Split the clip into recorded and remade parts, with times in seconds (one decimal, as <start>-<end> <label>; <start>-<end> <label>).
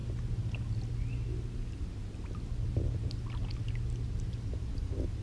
0.0-5.2 recorded